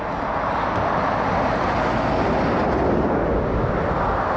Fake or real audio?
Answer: real